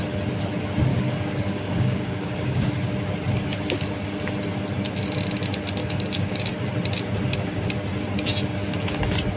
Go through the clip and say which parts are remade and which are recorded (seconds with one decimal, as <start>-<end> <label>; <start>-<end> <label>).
0.0-0.9 recorded; 0.9-2.7 remade; 2.7-5.8 recorded; 5.8-6.5 remade; 6.5-9.4 recorded